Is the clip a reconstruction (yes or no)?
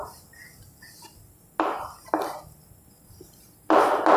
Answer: no